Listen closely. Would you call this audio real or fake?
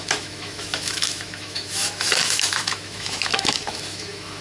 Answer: fake